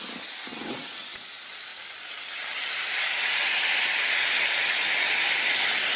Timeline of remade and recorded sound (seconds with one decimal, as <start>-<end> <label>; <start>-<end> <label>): 0.0-0.5 recorded; 0.5-1.2 remade; 1.2-6.0 recorded